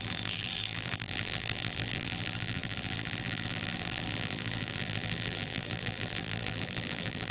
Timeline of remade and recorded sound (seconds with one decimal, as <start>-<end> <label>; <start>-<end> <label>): 0.0-7.3 remade